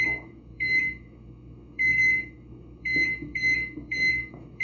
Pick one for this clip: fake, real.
fake